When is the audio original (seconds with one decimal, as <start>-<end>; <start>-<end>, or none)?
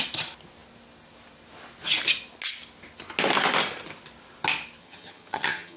0.0-4.8